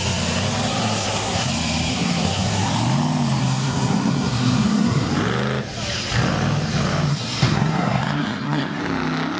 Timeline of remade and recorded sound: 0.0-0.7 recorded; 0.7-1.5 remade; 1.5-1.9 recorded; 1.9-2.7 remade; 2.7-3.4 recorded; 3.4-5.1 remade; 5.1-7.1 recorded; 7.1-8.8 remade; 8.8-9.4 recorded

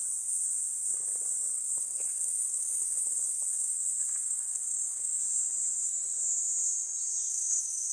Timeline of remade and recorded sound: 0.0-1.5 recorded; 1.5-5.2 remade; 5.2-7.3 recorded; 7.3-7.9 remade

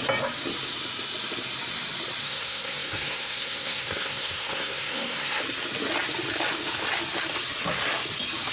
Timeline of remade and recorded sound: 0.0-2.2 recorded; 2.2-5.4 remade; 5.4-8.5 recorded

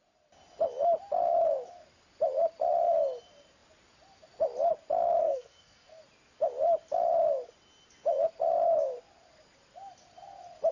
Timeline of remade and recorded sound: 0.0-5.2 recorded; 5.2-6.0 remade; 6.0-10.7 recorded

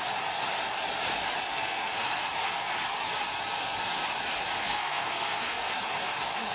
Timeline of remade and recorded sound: 0.0-1.5 recorded; 1.5-2.3 remade; 2.3-4.6 recorded; 4.6-5.7 remade; 5.7-6.5 recorded

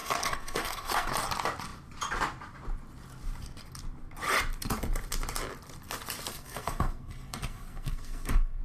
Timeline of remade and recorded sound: 0.0-1.1 remade; 1.1-6.3 recorded; 6.3-8.6 remade

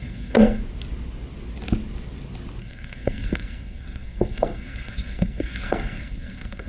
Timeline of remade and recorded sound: 0.0-0.6 remade; 0.6-2.6 recorded; 2.6-6.7 remade